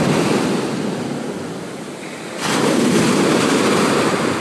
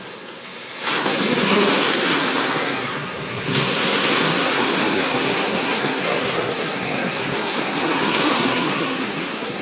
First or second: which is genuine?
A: first